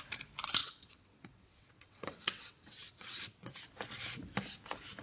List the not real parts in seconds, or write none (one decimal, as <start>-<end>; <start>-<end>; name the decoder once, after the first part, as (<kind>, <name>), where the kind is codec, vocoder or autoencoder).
0.6-3.6 (vocoder, WaveNeXt)